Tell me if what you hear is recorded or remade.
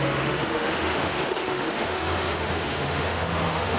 remade